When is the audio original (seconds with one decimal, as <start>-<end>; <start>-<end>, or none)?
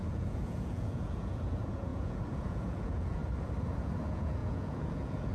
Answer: 3.2-3.8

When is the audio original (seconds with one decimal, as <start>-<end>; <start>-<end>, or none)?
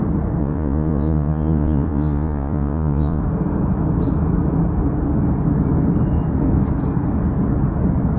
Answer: 0.0-0.4; 3.2-8.2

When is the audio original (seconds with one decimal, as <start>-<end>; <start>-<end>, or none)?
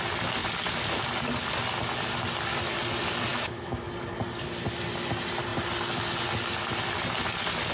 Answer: 0.0-3.3; 3.9-7.7